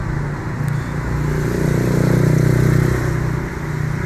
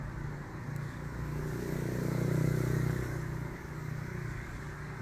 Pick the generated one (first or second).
second